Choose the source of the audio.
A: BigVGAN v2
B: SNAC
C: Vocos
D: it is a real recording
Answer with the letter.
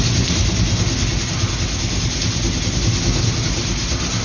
D